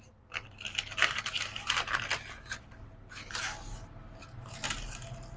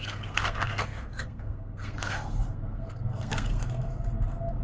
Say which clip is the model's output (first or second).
second